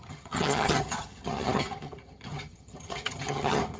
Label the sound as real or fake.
fake